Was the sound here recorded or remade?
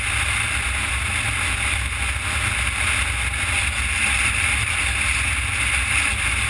recorded